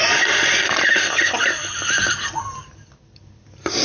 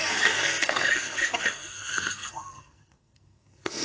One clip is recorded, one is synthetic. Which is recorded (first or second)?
first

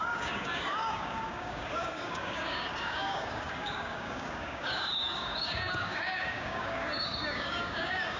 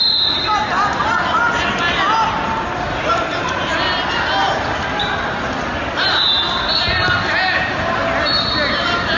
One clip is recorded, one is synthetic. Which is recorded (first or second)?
second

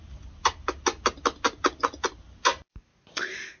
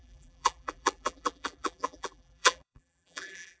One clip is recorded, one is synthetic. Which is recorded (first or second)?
first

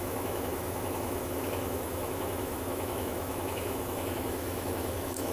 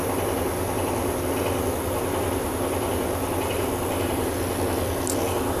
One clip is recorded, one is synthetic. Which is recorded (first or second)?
second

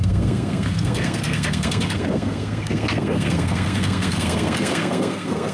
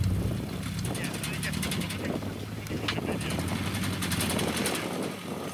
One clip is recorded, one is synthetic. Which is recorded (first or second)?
second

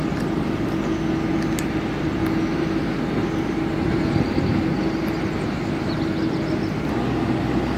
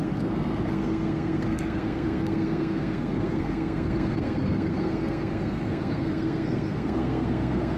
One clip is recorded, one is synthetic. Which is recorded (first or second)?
first